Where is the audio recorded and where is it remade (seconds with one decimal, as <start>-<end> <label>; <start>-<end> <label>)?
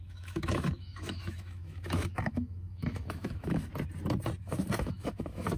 0.0-3.7 remade; 3.7-4.4 recorded; 4.4-5.6 remade